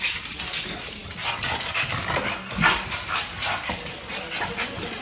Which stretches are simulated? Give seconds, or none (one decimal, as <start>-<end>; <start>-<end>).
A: none